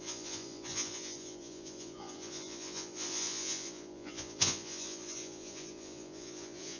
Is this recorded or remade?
remade